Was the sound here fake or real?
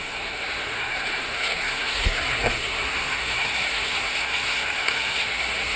fake